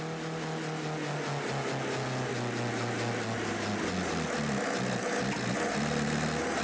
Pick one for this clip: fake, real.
real